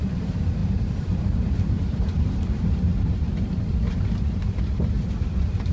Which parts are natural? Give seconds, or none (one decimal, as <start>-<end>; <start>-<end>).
2.9-3.5